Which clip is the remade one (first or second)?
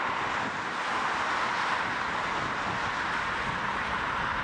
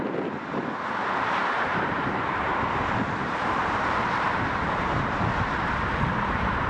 second